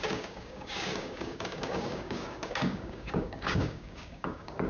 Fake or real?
fake